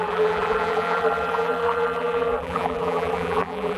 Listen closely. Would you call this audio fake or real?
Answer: fake